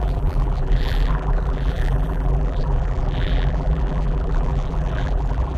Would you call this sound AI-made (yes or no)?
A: yes